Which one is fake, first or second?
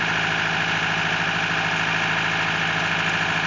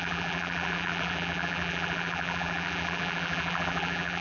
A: second